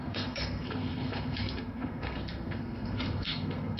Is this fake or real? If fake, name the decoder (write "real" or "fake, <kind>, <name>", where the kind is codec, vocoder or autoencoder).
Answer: fake, codec, SNAC